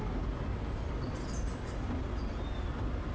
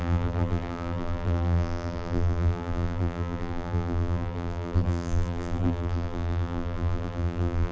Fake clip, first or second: second